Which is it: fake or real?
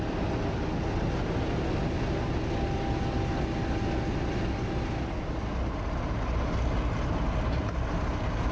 real